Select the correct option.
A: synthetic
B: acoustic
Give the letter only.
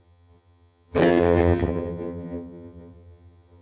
A